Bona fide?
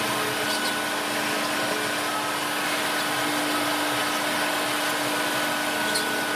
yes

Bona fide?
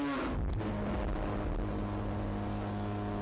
yes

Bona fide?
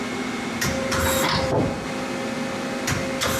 yes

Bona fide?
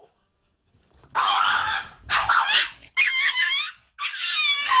no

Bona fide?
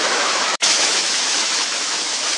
no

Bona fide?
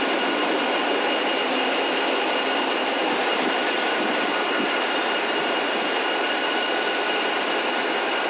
yes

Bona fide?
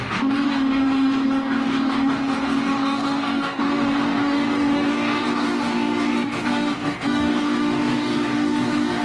no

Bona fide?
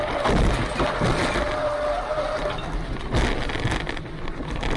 yes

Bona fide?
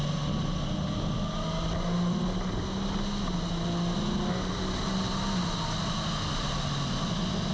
yes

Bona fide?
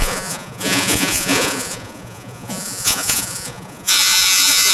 no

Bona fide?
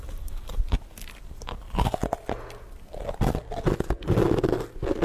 yes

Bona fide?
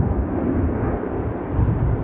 yes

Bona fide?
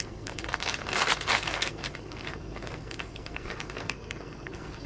no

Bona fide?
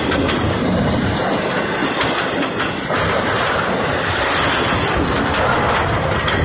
yes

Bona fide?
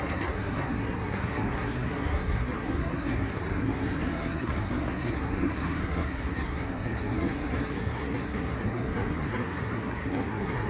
no